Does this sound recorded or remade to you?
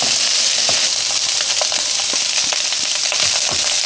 recorded